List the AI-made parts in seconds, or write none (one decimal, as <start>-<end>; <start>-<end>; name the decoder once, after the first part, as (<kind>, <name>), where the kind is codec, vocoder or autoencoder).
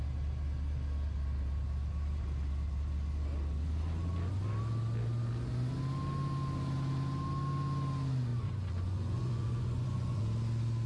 8.3-10.2 (vocoder, Vocos)